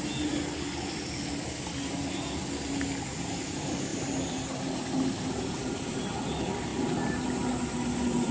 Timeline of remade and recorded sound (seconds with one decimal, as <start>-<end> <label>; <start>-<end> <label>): 0.0-3.9 recorded; 3.9-5.4 remade; 5.4-8.3 recorded